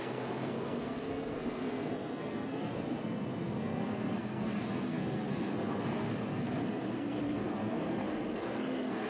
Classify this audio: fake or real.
fake